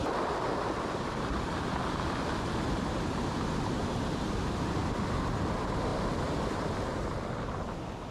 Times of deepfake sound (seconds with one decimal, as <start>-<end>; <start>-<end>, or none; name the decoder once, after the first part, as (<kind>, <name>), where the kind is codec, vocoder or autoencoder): none